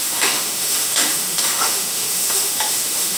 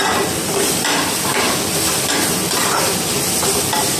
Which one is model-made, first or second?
first